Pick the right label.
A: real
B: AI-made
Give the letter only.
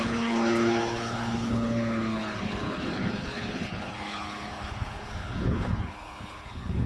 B